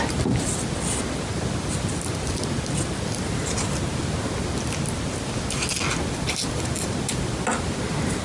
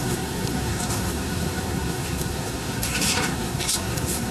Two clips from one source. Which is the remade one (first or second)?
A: second